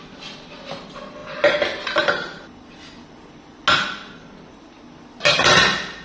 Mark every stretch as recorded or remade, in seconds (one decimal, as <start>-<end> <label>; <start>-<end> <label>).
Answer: 0.0-6.0 recorded